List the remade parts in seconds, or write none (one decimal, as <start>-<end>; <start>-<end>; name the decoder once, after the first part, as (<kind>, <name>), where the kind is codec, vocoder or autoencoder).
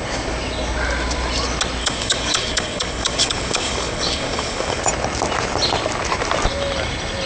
1.8-4.8 (codec, DAC)